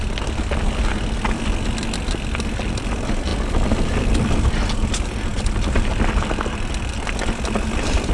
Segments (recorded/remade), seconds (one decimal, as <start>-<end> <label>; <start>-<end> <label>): 0.0-8.1 recorded